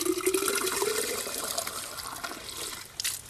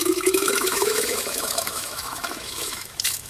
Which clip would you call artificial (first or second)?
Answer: second